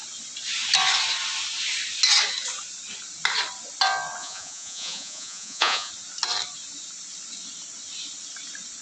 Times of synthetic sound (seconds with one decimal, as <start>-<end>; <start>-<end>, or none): 4.2-5.9